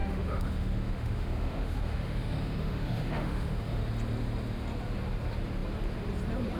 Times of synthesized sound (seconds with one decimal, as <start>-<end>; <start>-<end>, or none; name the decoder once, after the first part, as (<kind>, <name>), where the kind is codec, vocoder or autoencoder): 0.0-3.8 (autoencoder, DAC-VAE)